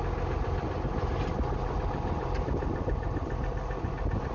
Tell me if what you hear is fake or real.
real